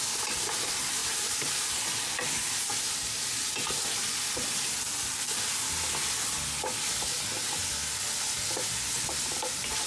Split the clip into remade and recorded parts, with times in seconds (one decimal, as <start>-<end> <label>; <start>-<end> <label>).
0.0-9.9 recorded